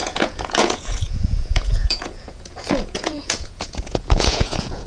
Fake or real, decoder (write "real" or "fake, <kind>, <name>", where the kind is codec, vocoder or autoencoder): fake, vocoder, Vocos